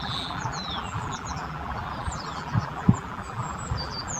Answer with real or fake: fake